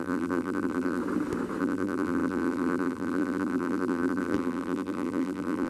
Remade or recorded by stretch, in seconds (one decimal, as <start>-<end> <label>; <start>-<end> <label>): 0.0-1.0 remade; 1.0-1.6 recorded; 1.6-5.7 remade